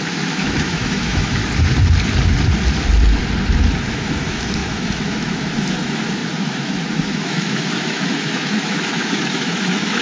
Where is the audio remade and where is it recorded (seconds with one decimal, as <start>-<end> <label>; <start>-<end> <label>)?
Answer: 0.0-1.4 remade; 1.4-3.9 recorded; 3.9-10.0 remade